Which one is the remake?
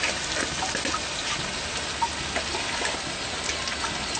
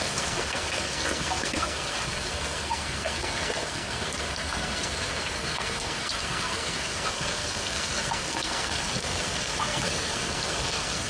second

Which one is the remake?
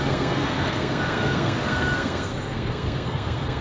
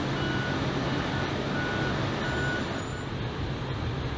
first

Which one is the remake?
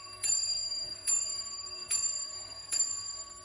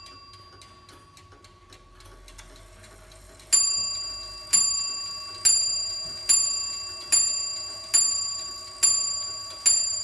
first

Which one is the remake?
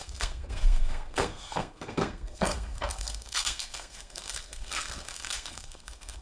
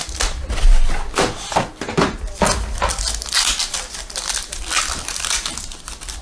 first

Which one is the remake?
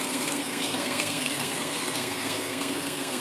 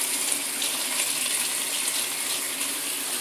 first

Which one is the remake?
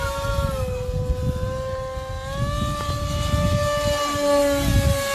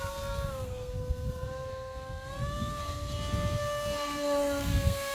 second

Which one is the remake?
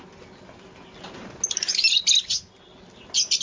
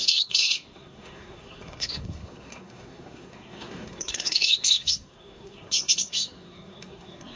second